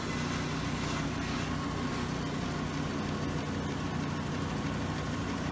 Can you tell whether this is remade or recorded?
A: recorded